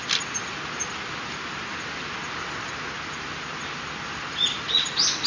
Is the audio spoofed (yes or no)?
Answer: no